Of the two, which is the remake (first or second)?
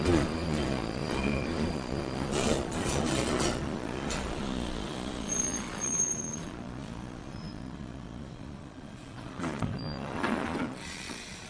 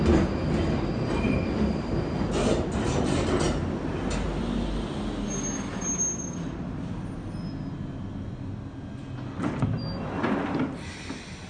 first